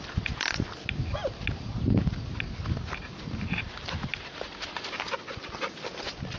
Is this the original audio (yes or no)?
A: yes